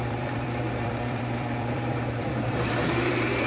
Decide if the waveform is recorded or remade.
remade